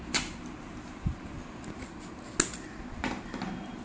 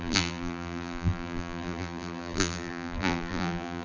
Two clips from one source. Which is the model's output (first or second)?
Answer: second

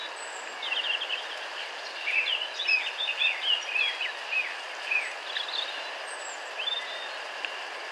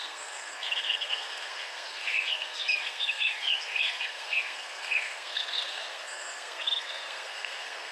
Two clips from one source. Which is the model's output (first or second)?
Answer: second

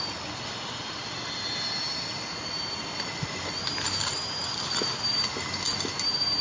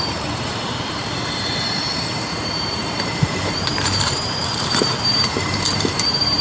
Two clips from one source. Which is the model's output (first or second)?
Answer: second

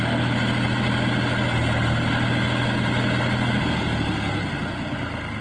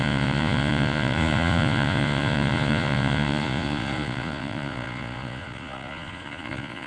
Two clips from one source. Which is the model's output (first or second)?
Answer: second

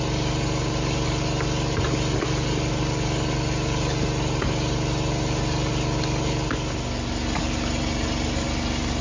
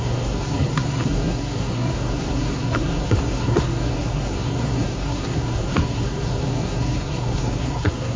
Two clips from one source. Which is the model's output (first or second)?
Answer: second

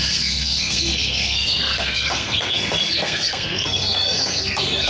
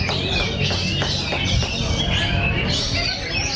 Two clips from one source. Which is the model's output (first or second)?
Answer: first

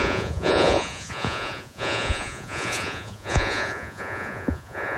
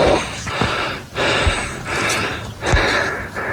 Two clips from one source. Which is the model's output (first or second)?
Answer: first